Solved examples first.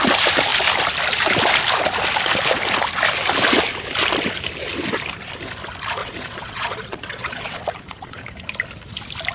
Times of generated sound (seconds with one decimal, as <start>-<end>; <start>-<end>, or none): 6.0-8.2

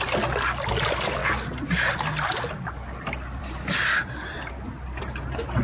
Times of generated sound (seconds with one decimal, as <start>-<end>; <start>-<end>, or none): none

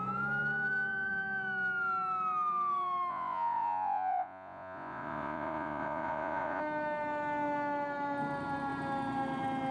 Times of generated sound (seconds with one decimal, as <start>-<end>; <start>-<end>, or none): 3.1-6.6